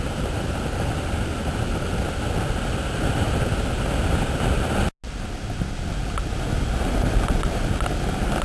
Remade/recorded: recorded